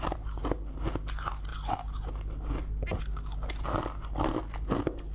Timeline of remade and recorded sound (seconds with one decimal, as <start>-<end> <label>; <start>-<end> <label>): 0.0-5.1 recorded